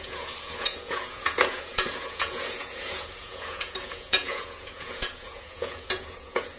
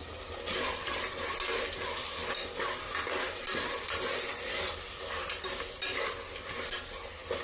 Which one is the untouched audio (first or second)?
second